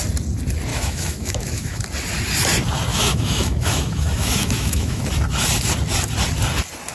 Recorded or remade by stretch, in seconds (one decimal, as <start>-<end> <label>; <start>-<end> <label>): 0.0-0.7 recorded; 0.7-1.8 remade; 1.8-2.9 recorded; 2.9-5.0 remade; 5.0-6.9 recorded